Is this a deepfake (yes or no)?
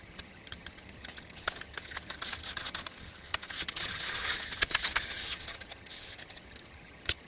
yes